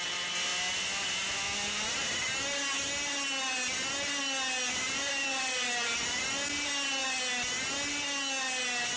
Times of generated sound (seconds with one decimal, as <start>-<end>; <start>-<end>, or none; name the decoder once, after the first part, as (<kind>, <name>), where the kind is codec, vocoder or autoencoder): 4.8-6.2 (vocoder, BigVGAN v2)